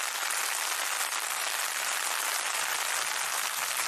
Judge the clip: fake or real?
real